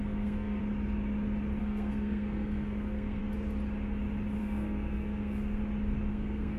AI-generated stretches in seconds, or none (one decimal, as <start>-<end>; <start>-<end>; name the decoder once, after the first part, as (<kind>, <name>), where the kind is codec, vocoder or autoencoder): 0.0-0.6 (codec, SNAC); 1.6-3.2; 4.4-5.6; 6.1-6.6